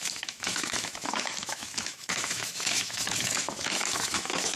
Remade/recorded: remade